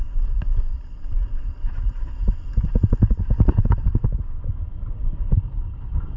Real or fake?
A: real